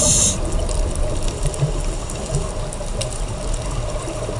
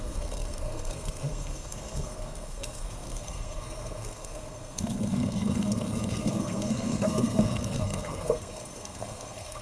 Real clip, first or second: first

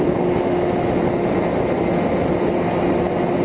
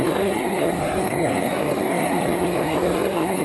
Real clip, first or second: first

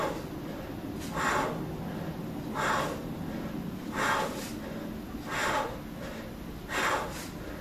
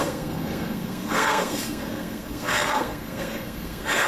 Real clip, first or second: first